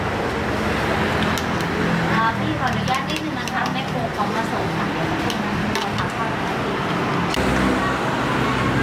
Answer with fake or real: real